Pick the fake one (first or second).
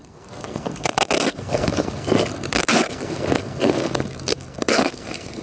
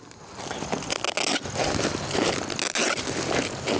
first